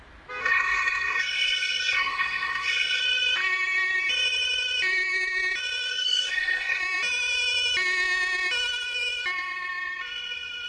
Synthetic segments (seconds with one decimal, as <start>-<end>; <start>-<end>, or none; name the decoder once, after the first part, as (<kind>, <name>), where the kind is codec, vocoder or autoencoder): 0.4-3.0 (codec, SNAC); 5.9-6.8